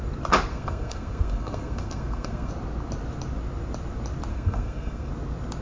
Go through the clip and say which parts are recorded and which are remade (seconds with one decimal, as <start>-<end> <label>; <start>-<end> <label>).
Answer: 0.0-0.5 recorded; 0.5-2.5 remade; 2.5-4.3 recorded; 4.3-5.1 remade; 5.1-5.6 recorded